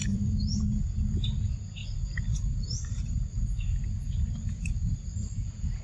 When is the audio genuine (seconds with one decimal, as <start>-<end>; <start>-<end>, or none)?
0.6-1.8; 3.4-5.8